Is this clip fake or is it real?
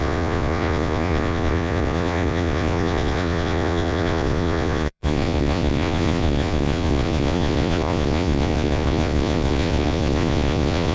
fake